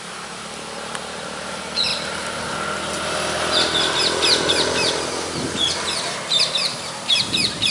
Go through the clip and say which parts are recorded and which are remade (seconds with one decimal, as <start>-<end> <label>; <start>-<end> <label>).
0.0-7.7 recorded